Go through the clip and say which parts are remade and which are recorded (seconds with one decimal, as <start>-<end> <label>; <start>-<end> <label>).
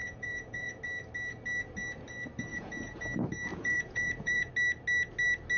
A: 0.0-0.8 remade; 0.8-2.5 recorded; 2.5-3.0 remade; 3.0-3.5 recorded; 3.5-4.5 remade; 4.5-5.6 recorded